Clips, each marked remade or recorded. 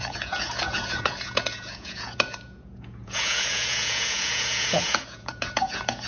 remade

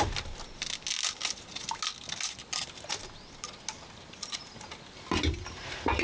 recorded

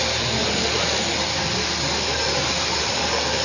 recorded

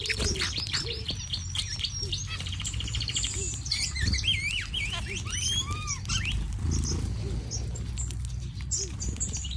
recorded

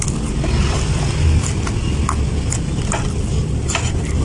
recorded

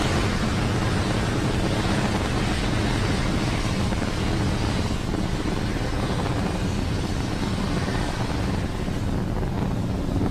recorded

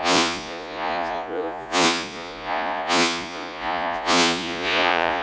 remade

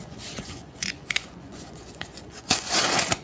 remade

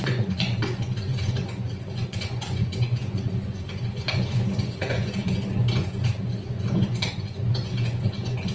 remade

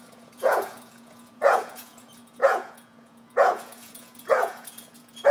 remade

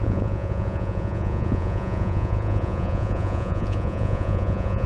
remade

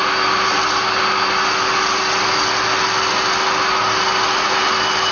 recorded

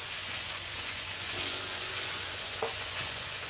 remade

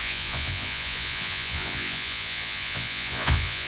remade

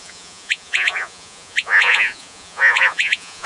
remade